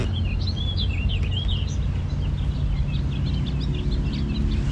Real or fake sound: real